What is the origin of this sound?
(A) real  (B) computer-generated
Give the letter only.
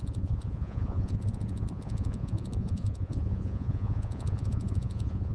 B